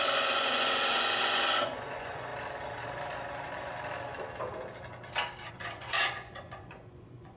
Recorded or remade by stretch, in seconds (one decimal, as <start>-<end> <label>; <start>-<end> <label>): 0.0-2.3 remade; 2.3-5.5 recorded; 5.5-7.4 remade